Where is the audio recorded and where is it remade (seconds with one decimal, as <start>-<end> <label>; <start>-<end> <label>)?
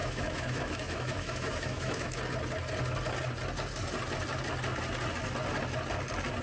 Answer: 0.0-2.2 remade; 2.2-6.4 recorded